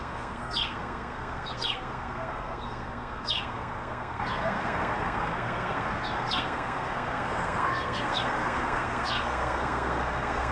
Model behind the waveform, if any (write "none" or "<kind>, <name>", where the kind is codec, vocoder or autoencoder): codec, SNAC